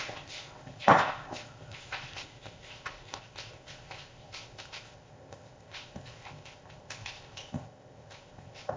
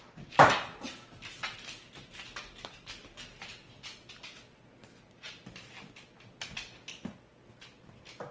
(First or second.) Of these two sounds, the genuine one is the second